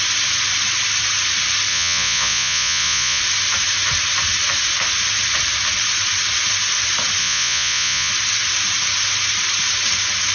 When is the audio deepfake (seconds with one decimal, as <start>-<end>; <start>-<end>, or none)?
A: 1.7-3.2; 7.2-8.1